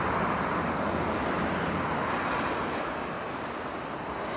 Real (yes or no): yes